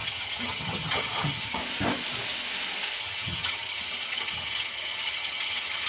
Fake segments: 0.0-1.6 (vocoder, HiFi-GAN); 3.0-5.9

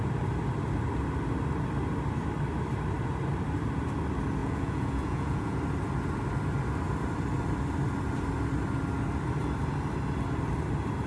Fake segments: 4.4-5.6 (vocoder, Vocos)

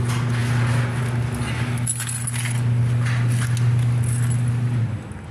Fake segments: none

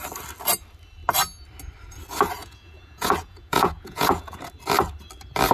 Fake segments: 2.4-4.4 (vocoder, Vocos)

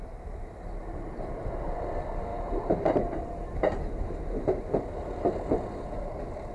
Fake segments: 0.8-1.4 (vocoder, BigVGAN v2); 2.3-3.8

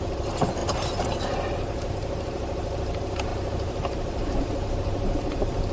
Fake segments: none

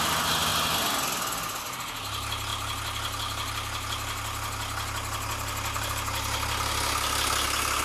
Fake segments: none